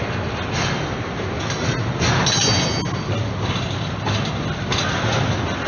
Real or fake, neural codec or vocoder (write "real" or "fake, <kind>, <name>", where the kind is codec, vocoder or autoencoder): real